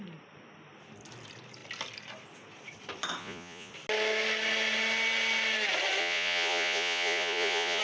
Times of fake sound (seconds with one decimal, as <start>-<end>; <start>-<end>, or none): 3.2-3.7; 6.0-7.8